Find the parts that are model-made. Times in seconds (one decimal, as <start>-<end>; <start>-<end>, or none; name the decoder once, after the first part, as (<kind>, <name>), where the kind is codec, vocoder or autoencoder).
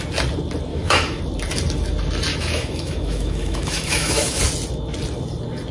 0.7-1.2 (autoencoder, DAC-VAE); 2.3-4.4